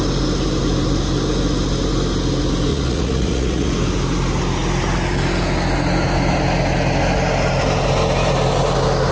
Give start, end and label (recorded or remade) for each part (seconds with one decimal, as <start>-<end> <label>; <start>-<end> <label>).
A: 0.0-2.7 recorded; 2.7-3.7 remade; 3.7-9.1 recorded